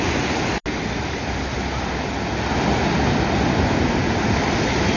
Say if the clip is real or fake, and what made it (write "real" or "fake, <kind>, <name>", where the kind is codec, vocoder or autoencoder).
real